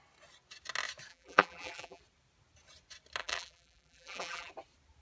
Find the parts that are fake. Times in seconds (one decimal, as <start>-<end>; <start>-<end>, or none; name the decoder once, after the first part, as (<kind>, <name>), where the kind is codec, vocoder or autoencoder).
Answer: 1.1-2.0 (vocoder, BigVGAN v2); 3.2-4.5